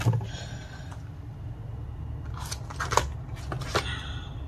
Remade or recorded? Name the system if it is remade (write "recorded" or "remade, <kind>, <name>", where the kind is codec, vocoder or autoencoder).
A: recorded